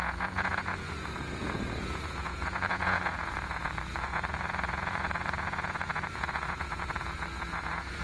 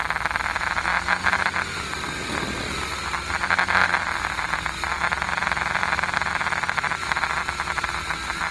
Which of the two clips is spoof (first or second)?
first